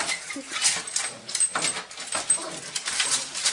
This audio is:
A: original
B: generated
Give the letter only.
A